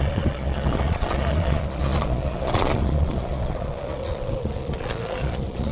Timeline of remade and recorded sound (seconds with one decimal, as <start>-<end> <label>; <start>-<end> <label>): 0.0-5.7 remade